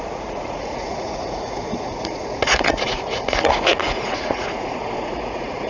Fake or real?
fake